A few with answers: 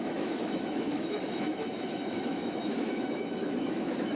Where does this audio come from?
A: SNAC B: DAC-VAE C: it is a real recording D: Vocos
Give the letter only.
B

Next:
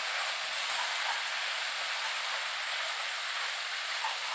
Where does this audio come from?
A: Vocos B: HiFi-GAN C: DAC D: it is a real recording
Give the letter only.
D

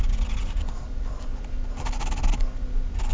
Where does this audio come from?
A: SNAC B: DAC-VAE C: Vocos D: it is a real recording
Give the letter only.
D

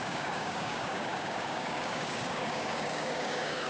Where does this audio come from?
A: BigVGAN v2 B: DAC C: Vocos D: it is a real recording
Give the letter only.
B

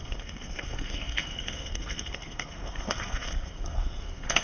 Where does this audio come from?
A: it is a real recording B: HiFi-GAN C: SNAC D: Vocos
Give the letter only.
C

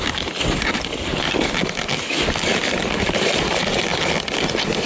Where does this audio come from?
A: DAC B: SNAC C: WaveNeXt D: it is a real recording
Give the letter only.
D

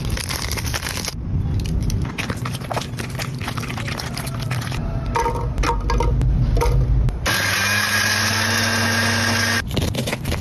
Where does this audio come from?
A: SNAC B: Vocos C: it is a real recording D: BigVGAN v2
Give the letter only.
C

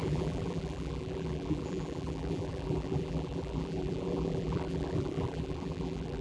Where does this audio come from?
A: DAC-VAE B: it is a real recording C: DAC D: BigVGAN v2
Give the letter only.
D